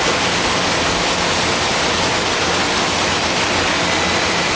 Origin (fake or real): real